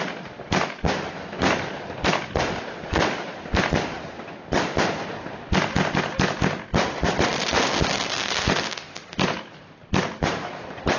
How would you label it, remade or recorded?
recorded